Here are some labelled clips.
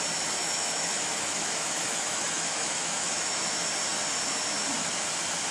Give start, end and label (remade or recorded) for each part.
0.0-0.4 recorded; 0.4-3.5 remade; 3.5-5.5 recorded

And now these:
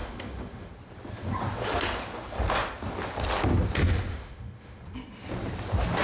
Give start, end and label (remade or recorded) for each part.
0.0-0.7 remade; 0.7-4.1 recorded; 4.1-4.8 remade; 4.8-6.0 recorded

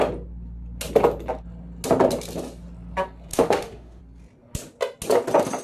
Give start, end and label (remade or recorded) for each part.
0.0-3.3 recorded; 3.3-4.0 remade; 4.0-5.6 recorded

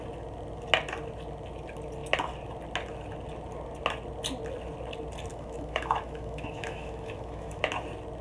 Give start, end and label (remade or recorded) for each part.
0.0-5.3 recorded; 5.3-7.6 remade; 7.6-8.2 recorded

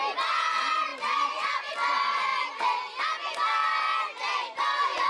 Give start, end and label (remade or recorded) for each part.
0.0-5.1 recorded

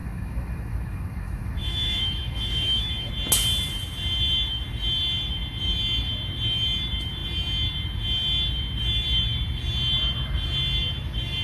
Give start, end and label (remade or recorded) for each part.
0.0-3.1 remade; 3.1-11.4 recorded

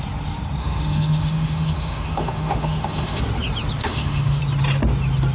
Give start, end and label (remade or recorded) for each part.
0.0-0.6 recorded; 0.6-3.2 remade; 3.2-3.8 recorded; 3.8-4.4 remade; 4.4-5.3 recorded